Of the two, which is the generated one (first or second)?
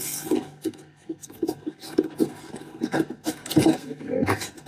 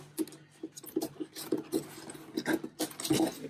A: first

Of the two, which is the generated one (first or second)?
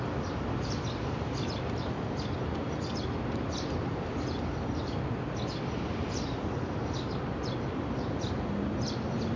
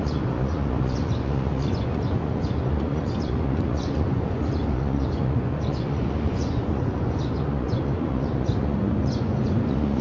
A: second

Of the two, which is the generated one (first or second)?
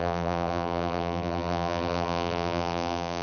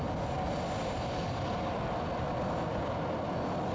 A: first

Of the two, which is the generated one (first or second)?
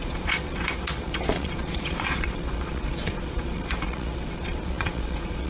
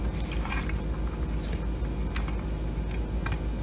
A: first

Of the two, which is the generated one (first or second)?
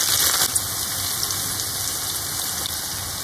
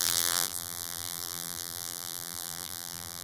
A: second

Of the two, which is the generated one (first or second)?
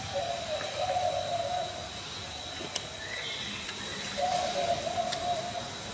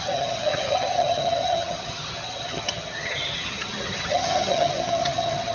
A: second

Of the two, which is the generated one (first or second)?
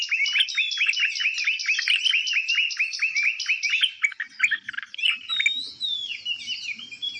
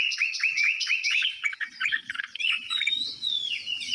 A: second